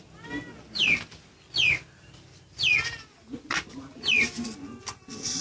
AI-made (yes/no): no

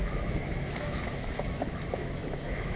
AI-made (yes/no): yes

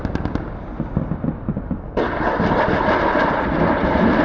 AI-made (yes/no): no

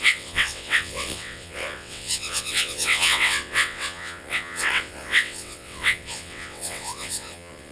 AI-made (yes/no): yes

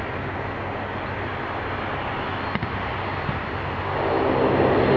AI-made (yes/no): no